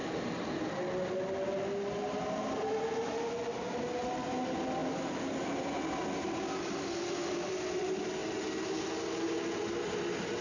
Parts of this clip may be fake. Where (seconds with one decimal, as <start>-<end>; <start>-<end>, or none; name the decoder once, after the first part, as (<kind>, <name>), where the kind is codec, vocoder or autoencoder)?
none